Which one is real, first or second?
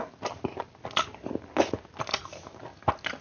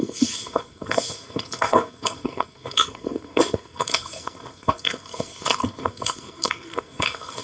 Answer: first